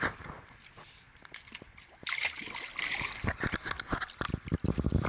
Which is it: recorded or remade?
recorded